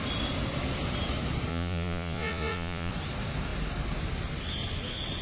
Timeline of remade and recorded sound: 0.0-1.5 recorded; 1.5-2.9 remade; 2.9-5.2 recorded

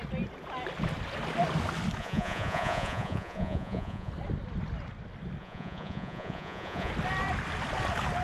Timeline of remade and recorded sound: 0.0-2.0 recorded; 2.0-4.1 remade; 4.1-5.4 recorded; 5.4-6.9 remade; 6.9-8.2 recorded

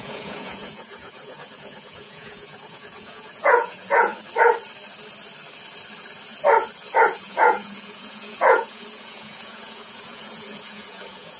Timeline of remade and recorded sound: 0.0-4.1 remade; 4.1-7.2 recorded; 7.2-11.4 remade

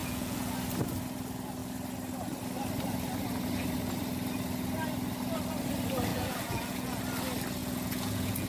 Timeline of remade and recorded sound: 0.0-0.5 remade; 0.5-6.1 recorded; 6.1-7.0 remade; 7.0-7.6 recorded; 7.6-8.5 remade